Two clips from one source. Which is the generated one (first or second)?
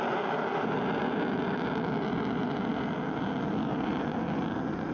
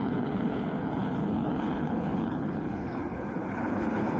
second